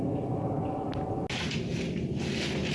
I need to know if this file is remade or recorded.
recorded